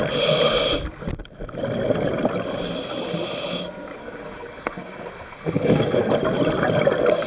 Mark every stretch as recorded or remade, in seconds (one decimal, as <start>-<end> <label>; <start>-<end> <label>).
0.0-4.0 recorded; 4.0-6.1 remade; 6.1-7.3 recorded